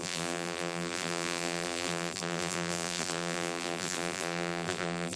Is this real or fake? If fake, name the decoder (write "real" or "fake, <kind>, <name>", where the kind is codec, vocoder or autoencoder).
fake, vocoder, BigVGAN v2